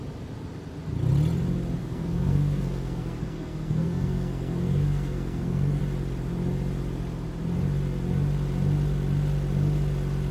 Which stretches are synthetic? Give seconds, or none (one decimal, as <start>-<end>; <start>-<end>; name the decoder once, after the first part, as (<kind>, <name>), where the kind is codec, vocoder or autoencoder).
1.8-5.8 (codec, SNAC)